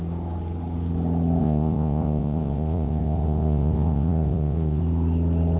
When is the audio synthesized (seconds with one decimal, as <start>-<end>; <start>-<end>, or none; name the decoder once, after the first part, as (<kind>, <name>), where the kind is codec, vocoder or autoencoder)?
1.4-4.8 (vocoder, Vocos)

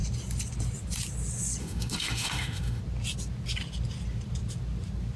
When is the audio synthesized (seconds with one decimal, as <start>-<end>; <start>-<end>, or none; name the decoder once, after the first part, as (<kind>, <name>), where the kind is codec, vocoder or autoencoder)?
1.6-2.8 (autoencoder, DAC-VAE)